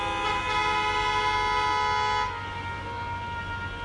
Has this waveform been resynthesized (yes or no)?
no